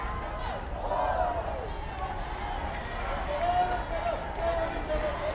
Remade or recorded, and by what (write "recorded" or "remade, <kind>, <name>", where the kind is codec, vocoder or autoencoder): recorded